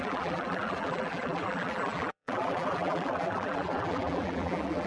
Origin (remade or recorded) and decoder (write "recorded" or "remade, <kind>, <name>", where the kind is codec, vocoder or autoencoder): remade, vocoder, BigVGAN v2